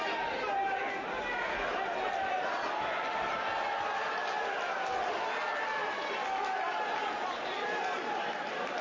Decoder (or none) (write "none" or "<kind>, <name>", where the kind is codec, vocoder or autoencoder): none